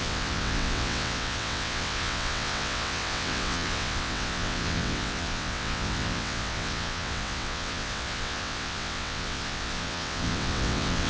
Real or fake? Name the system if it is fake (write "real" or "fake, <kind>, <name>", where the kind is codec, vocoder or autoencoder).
fake, vocoder, WaveNeXt